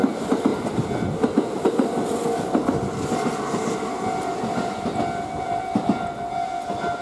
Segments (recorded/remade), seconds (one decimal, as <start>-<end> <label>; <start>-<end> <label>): 0.0-7.0 recorded